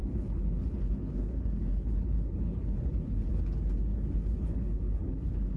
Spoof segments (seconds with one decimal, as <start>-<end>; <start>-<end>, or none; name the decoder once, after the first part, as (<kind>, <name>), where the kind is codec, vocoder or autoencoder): 0.0-3.4 (codec, HILCodec); 3.9-5.6